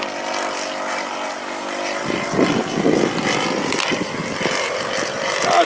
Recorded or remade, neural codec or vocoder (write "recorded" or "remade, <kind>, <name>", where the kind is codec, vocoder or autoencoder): recorded